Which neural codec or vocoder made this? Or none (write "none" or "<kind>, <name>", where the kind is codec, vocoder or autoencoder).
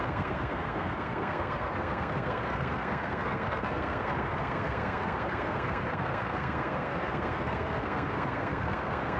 codec, SNAC